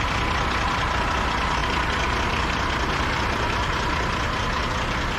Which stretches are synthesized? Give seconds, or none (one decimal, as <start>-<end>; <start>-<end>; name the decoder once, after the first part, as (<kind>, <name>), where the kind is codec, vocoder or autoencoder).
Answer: none